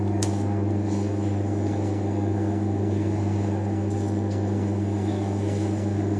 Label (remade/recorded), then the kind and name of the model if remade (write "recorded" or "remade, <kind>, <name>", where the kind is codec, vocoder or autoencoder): remade, codec, SNAC